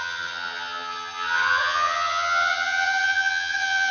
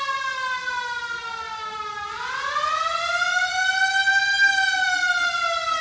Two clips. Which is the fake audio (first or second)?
first